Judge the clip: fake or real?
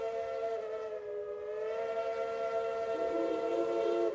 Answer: real